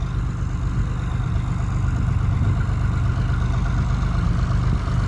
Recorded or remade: recorded